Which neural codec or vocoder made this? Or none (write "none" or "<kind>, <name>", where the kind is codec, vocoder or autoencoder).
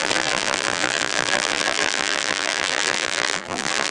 vocoder, BigVGAN v2